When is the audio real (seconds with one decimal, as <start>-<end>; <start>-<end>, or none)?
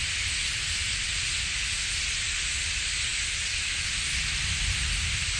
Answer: 0.0-5.4